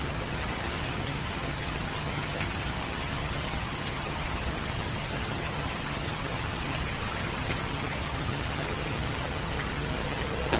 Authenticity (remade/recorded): remade